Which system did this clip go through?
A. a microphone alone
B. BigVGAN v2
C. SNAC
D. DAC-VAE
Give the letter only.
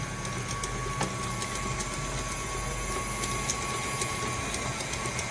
A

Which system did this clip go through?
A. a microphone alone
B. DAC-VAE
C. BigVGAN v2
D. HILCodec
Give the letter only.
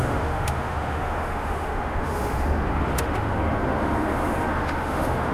B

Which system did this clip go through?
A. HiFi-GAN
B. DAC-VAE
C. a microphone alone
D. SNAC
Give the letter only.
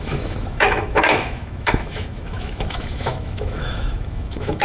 B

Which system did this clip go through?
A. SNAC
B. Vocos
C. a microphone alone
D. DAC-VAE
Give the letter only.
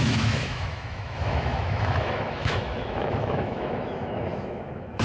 D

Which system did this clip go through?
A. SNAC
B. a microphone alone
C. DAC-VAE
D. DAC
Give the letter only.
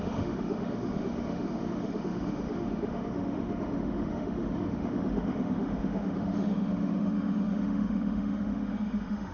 C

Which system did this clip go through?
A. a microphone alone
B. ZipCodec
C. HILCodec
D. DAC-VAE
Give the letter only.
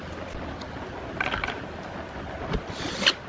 A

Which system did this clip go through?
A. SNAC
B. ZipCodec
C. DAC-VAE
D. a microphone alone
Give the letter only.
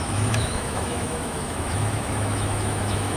C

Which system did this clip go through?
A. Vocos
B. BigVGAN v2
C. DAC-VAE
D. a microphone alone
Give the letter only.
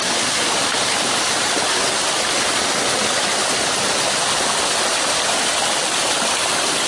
D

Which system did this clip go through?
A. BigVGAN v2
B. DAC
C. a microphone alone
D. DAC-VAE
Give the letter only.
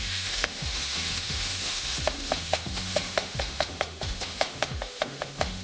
D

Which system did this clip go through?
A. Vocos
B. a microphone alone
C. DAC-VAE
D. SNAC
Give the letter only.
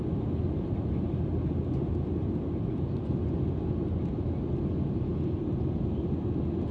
B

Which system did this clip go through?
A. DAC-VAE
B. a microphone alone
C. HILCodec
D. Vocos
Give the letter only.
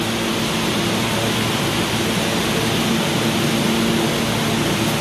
B